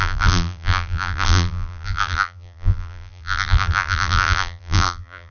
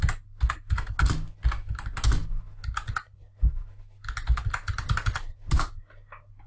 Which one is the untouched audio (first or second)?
second